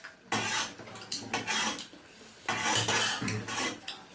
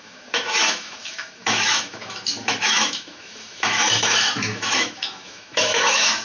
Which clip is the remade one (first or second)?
second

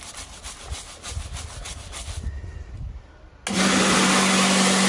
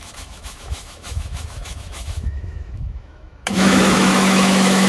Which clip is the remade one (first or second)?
second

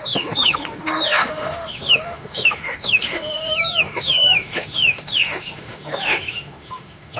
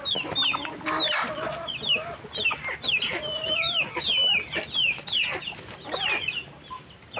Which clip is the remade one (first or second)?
first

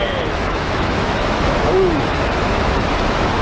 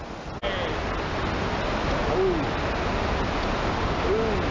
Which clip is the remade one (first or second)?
first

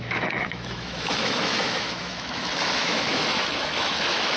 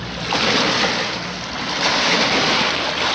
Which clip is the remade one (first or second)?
first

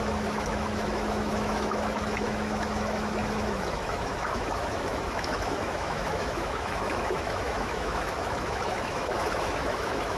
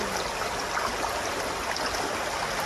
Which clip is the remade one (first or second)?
first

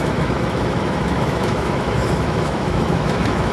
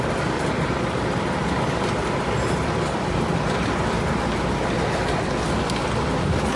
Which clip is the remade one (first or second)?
first